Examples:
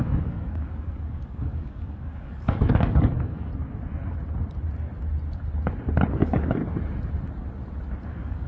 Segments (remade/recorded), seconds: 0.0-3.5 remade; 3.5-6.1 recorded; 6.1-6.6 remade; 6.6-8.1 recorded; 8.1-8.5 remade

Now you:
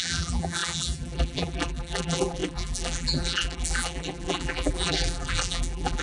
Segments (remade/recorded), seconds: 0.0-6.0 remade

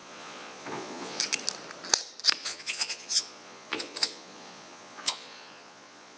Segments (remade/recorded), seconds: 0.0-1.2 remade; 1.2-2.4 recorded; 2.4-6.2 remade

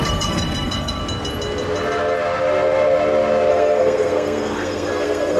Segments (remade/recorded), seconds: 0.0-1.0 remade; 1.0-3.5 recorded; 3.5-5.4 remade

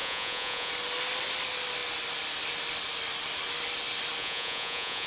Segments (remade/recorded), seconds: 0.0-0.7 remade; 0.7-4.2 recorded; 4.2-5.1 remade

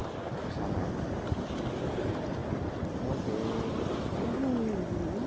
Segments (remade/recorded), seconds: 0.0-2.4 recorded; 2.4-3.0 remade; 3.0-5.3 recorded

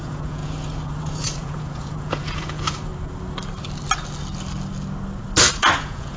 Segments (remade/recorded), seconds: 0.0-2.9 remade; 2.9-5.8 recorded; 5.8-6.2 remade

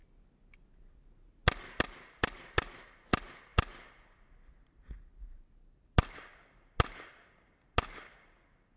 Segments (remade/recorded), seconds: 0.0-8.8 recorded